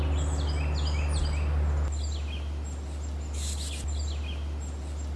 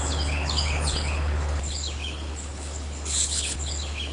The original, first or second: first